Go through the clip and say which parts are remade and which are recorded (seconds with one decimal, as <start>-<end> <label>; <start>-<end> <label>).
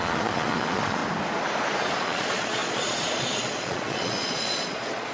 0.0-1.0 remade; 1.0-2.0 recorded; 2.0-5.1 remade